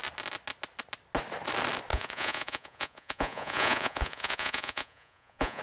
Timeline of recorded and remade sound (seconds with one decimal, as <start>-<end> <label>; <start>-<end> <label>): 0.0-1.9 recorded; 1.9-5.6 remade